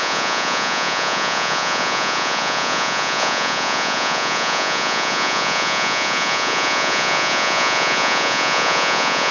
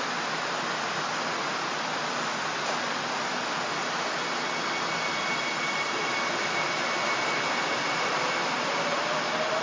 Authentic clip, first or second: second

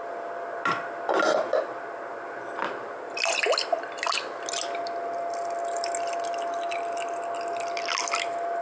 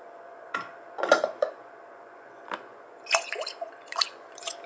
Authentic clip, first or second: first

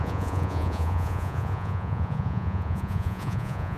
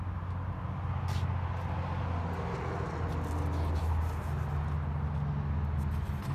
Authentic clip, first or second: second